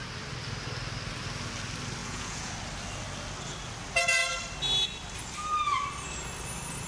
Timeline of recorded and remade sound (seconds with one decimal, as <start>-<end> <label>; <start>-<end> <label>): 0.0-2.0 recorded; 2.0-2.5 remade; 2.5-6.9 recorded